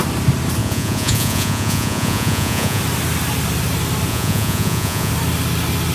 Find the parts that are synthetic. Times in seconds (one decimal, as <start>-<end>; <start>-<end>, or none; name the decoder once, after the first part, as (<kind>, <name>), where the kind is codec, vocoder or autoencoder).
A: 0.6-2.8 (vocoder, Vocos); 4.1-5.1